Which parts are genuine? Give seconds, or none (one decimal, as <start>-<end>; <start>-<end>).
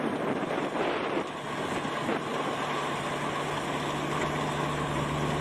0.0-5.4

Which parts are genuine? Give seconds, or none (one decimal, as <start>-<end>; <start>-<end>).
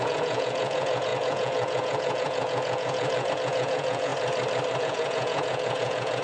4.1-4.8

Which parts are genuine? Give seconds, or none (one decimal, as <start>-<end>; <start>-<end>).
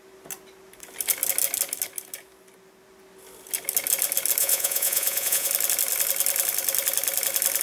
0.0-4.4; 5.5-7.6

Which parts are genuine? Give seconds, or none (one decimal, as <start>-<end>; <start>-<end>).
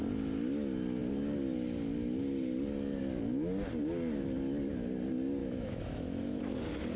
0.0-5.4; 6.4-7.0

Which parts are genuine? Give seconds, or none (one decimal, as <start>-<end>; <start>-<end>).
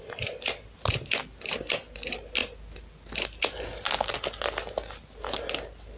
0.0-6.0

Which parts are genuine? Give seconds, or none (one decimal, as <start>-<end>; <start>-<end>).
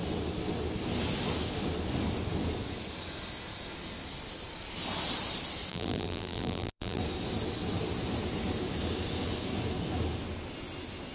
0.0-5.7; 7.0-11.1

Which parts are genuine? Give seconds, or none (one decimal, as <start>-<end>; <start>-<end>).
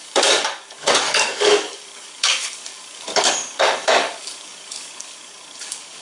none